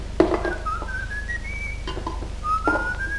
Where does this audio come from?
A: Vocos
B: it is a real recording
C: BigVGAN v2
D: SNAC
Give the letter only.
B